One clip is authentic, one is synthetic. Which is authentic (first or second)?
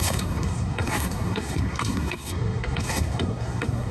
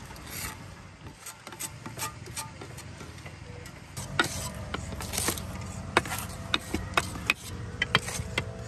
second